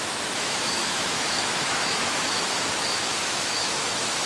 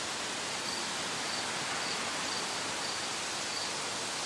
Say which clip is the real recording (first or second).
second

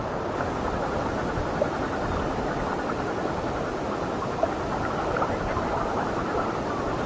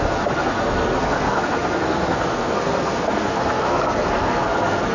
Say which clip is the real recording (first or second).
first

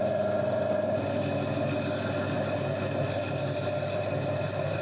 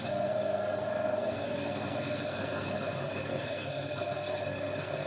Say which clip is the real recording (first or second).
first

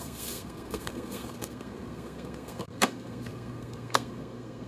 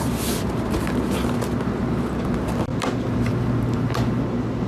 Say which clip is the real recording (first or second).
second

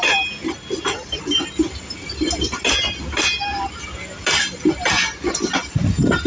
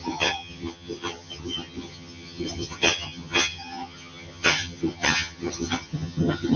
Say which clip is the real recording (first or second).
first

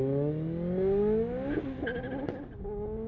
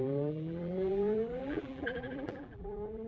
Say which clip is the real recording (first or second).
first